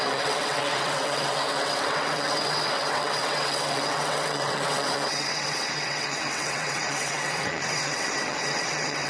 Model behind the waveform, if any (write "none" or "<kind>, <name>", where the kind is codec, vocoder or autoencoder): vocoder, WaveNeXt